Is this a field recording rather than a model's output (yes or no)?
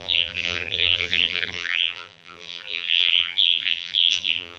no